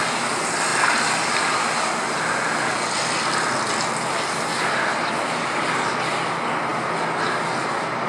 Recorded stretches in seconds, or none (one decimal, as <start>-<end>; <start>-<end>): 0.0-8.1

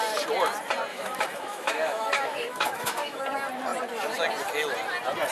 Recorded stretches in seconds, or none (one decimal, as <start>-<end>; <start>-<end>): 0.0-0.9; 3.2-5.3

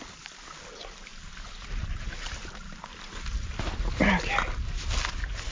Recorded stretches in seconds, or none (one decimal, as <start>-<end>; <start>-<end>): 0.0-5.5